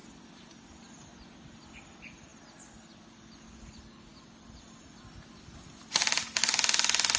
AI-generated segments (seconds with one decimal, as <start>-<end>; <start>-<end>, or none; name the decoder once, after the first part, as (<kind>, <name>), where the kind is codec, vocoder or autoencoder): 0.9-2.3 (vocoder, BigVGAN v2); 3.6-7.2